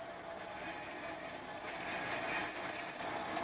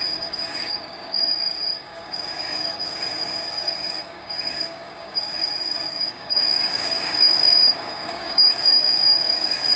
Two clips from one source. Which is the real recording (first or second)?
first